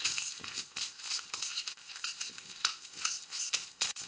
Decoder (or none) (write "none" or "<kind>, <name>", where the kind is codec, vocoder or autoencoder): codec, ZipCodec